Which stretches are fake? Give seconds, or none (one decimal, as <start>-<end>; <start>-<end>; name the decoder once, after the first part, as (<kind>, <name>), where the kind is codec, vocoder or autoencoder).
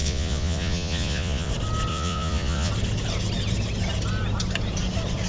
0.0-1.5 (vocoder, Vocos); 1.9-2.7